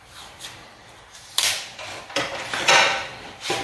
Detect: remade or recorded recorded